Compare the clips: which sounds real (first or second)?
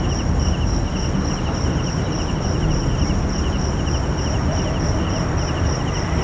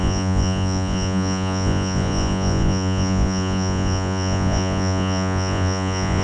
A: first